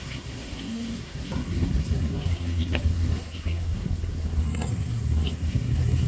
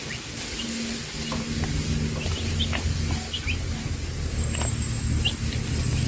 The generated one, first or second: first